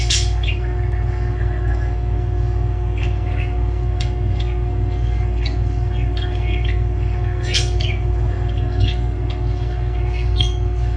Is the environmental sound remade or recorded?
remade